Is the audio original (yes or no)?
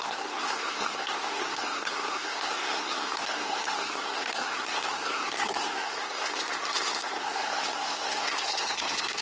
no